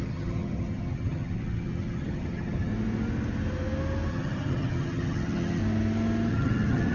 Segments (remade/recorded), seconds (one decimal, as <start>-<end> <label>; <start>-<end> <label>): 0.0-2.7 remade; 2.7-4.1 recorded; 4.1-5.6 remade; 5.6-6.3 recorded; 6.3-6.9 remade